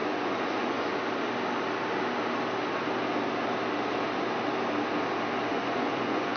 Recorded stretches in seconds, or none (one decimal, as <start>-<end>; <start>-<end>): 0.8-5.5